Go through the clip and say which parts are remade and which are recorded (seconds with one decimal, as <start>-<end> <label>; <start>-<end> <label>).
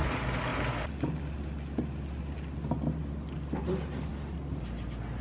0.0-5.2 recorded